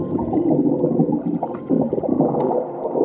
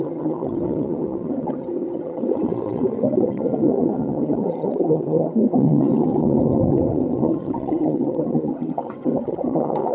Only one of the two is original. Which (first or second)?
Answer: first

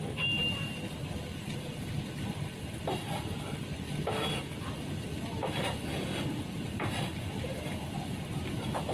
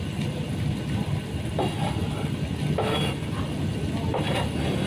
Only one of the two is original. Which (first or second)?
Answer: second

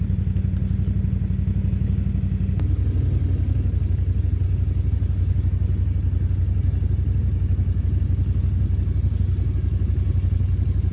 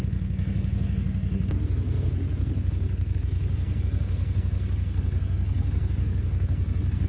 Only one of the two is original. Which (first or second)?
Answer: first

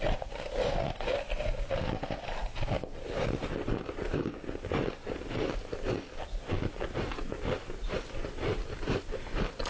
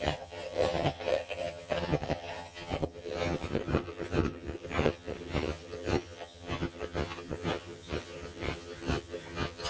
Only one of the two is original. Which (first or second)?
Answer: first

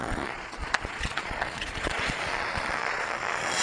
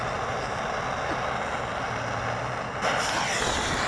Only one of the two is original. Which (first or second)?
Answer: second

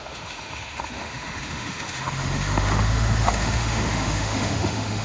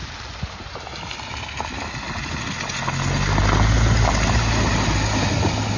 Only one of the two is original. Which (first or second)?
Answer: second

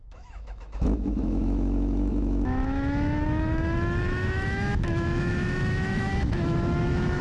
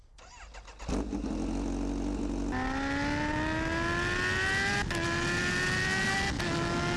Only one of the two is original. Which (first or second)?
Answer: second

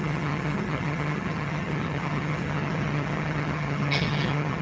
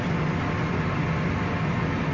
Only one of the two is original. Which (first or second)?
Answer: second